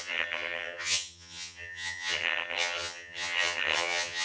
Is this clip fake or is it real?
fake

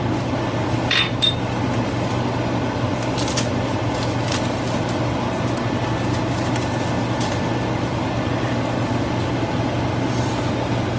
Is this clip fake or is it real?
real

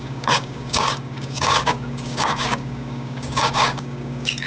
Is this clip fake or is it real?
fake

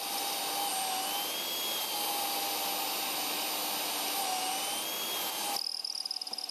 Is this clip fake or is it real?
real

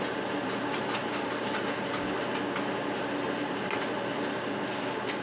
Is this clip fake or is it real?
real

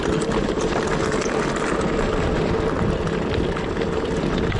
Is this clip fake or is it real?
real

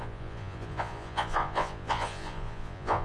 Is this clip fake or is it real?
fake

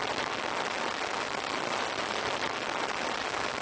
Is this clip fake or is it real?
real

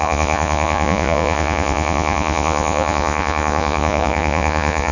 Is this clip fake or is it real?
fake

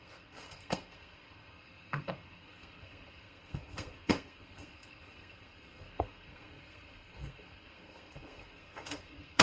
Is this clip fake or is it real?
fake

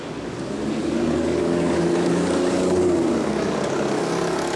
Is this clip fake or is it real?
fake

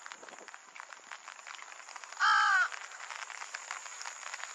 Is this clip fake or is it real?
real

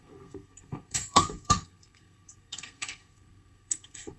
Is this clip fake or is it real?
fake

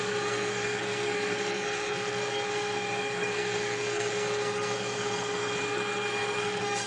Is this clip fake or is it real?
fake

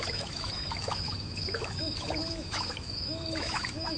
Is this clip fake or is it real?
fake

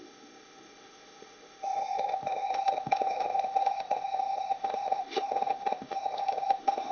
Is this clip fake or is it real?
fake